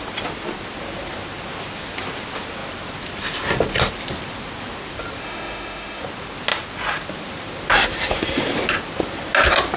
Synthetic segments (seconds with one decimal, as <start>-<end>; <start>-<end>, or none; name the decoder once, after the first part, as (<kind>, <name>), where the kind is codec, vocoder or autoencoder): 5.2-6.0 (autoencoder, DAC-VAE)